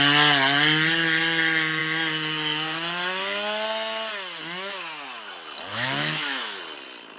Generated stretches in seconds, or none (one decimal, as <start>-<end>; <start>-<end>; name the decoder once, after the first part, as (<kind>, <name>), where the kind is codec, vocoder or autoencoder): 5.7-6.6 (autoencoder, DAC-VAE)